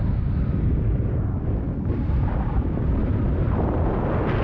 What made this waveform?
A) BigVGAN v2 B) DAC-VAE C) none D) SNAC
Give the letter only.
C